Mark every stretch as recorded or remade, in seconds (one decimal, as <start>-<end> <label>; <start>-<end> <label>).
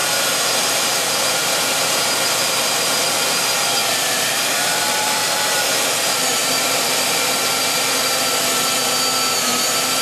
0.0-3.8 recorded; 3.8-5.6 remade; 5.6-6.4 recorded; 6.4-8.7 remade; 8.7-10.0 recorded